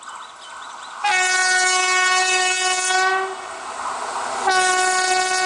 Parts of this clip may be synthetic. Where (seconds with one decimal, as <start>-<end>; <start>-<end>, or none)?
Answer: none